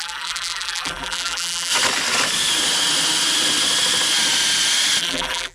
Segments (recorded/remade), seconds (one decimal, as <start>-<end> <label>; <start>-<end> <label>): 0.0-1.7 remade; 1.7-5.0 recorded; 5.0-5.5 remade